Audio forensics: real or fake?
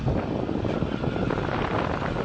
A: real